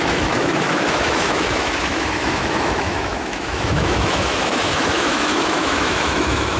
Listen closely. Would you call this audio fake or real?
fake